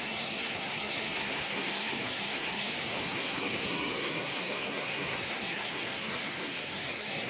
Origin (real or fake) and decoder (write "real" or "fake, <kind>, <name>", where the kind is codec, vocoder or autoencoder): fake, codec, SNAC